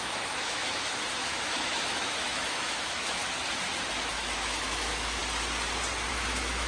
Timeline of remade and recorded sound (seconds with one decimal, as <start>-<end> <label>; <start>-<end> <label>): 0.0-3.2 remade; 3.2-4.1 recorded; 4.1-5.2 remade; 5.2-6.1 recorded; 6.1-6.7 remade